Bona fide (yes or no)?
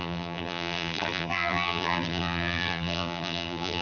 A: no